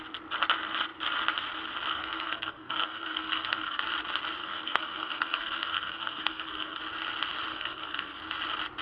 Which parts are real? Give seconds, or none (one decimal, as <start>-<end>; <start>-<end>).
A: 0.0-1.9; 3.8-4.4; 6.8-7.5; 8.2-8.8